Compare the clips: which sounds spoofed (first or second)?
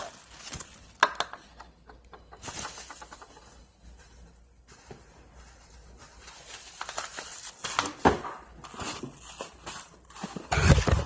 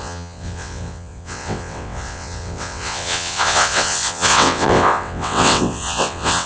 second